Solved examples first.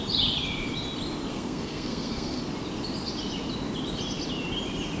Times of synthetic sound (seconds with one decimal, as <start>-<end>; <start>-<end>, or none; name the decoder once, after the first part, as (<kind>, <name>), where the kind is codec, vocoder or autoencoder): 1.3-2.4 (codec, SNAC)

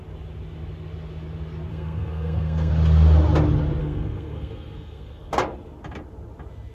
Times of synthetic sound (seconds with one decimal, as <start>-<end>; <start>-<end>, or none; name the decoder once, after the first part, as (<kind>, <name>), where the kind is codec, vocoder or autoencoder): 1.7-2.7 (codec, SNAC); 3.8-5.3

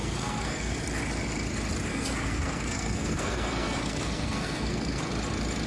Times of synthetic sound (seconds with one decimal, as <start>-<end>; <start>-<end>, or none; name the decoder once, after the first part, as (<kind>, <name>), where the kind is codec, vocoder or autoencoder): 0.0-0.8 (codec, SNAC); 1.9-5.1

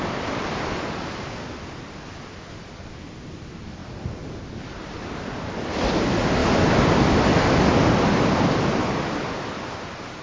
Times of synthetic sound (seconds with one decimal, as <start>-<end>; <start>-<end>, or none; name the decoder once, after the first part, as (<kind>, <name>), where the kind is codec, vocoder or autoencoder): none

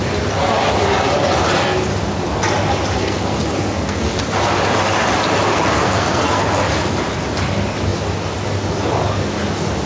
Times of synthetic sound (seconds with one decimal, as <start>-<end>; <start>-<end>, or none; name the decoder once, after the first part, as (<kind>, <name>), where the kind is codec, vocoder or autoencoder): 3.0-4.2 (codec, SNAC); 5.5-6.4

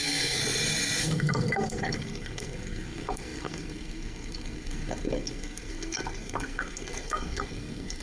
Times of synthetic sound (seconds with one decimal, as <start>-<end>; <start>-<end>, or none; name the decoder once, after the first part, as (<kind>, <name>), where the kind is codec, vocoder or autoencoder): 0.0-0.4 (codec, SNAC); 1.0-8.0

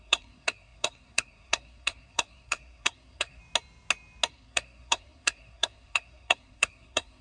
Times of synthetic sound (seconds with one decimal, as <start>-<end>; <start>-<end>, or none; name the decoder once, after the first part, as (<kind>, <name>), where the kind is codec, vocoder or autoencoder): 0.0-3.4 (codec, SNAC); 4.3-7.2